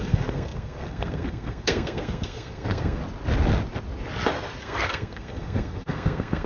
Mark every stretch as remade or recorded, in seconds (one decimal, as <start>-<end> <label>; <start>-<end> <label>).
0.0-3.0 remade; 3.0-4.6 recorded; 4.6-6.5 remade